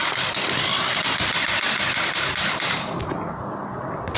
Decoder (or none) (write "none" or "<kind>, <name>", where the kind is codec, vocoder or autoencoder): none